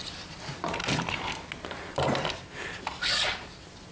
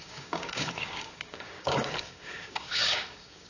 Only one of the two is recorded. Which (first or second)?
first